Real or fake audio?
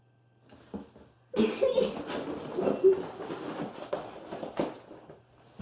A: real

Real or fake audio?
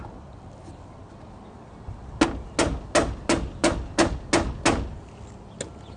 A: real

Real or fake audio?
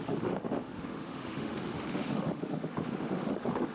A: fake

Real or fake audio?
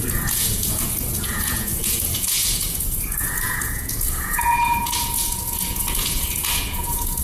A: fake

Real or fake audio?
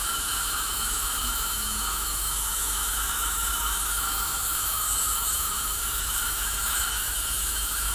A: fake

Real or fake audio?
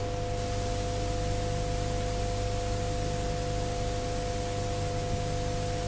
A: real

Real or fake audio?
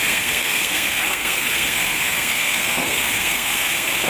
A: fake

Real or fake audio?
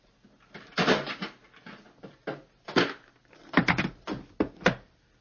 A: real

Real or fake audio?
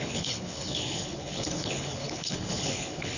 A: fake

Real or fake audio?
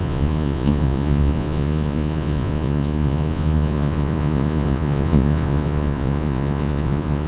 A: fake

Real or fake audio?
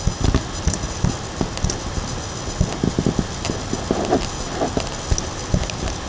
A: real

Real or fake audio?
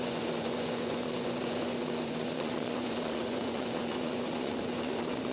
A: fake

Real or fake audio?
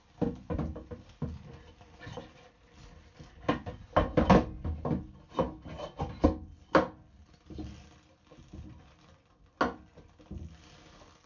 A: real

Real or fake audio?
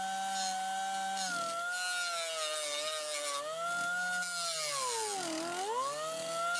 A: real